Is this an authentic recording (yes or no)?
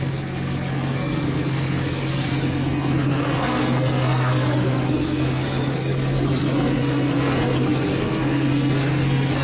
no